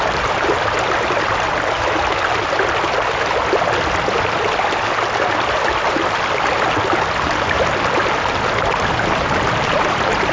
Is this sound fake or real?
real